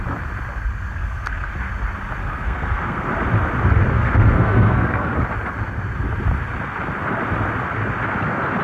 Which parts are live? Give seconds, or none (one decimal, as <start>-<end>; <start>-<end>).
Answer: 0.0-0.9; 1.5-2.2; 3.1-3.9; 5.2-8.6